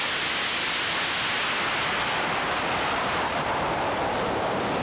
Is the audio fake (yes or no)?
no